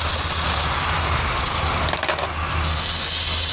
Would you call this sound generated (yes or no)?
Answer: no